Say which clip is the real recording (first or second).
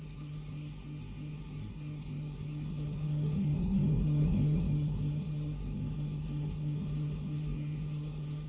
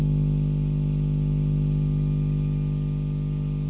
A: second